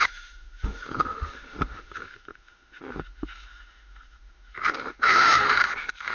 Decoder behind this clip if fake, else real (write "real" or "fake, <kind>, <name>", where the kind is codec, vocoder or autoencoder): fake, autoencoder, DAC-VAE